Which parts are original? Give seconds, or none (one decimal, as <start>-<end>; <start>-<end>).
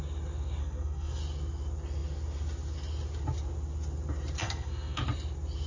0.0-0.6; 1.2-4.4; 5.0-5.7